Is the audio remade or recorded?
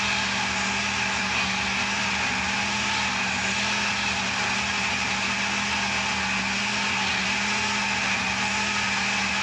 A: recorded